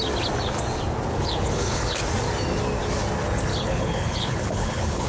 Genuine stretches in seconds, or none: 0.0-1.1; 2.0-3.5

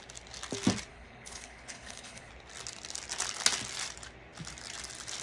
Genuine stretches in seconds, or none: 0.0-0.9; 2.3-5.2

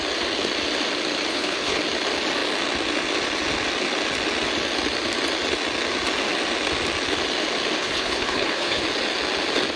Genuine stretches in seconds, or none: 0.0-1.3; 1.8-7.8; 8.8-9.8

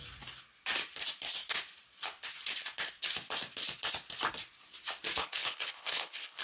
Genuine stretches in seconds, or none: 0.0-5.2

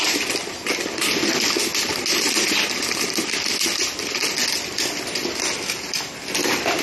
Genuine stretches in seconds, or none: 0.0-6.8

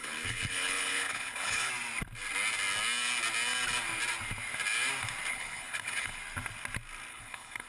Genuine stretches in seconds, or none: 1.7-5.3; 6.2-7.1